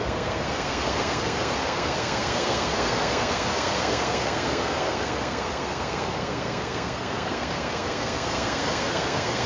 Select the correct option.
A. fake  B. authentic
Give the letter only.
A